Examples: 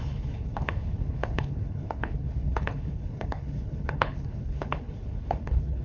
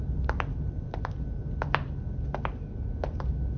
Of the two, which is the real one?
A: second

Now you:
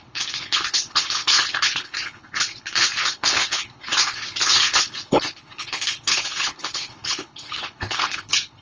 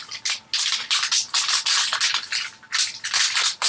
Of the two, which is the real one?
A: second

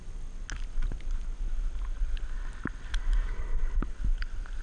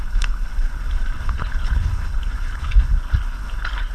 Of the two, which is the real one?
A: first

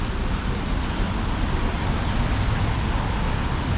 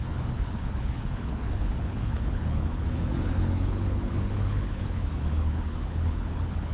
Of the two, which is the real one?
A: first